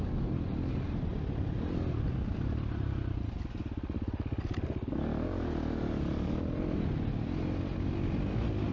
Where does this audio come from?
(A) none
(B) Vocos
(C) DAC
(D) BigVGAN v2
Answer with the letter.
A